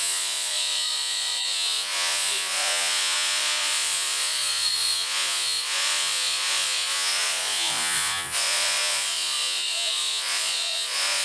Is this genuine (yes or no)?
no